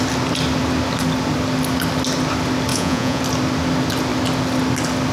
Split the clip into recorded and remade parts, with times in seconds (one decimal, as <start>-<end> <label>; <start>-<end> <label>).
0.0-2.7 recorded; 2.7-3.2 remade; 3.2-5.1 recorded